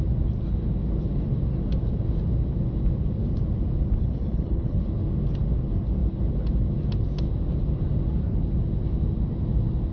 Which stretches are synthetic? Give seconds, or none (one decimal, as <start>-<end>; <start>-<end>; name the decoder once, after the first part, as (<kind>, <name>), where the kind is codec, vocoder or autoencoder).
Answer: 4.0-4.8 (codec, HILCodec)